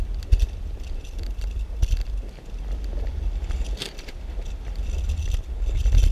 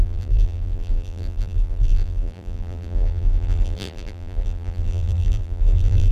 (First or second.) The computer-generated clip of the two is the second